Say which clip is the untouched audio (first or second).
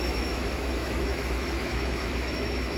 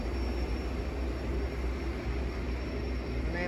second